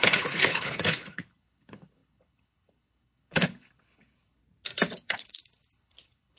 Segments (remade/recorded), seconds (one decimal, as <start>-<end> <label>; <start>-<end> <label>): 0.0-4.4 remade; 4.4-5.0 recorded; 5.0-6.4 remade